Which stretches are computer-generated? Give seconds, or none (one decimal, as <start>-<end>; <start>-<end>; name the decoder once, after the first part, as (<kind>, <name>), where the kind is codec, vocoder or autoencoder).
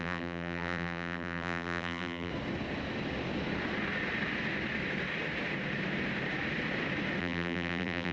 0.0-2.3 (vocoder, BigVGAN v2); 7.2-8.1